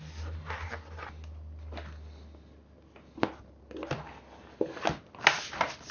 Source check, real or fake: real